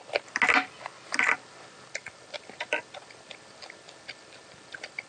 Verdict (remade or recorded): recorded